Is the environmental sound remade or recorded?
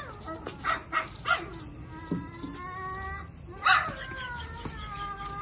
recorded